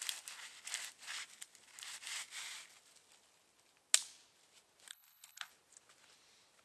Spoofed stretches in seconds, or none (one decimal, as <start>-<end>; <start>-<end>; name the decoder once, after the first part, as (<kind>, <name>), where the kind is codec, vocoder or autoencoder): 4.9-5.5 (codec, HILCodec)